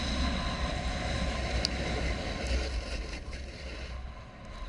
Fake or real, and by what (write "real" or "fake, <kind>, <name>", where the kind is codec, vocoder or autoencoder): real